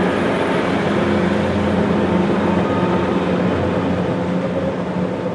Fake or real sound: real